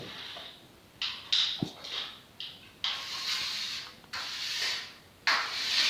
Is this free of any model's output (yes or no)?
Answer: yes